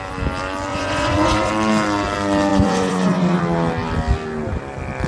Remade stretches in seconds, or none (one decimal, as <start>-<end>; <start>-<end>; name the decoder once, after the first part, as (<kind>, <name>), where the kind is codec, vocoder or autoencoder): 0.7-1.5 (vocoder, Vocos); 2.5-3.4